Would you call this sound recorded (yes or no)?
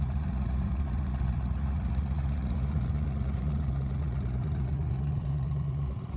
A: no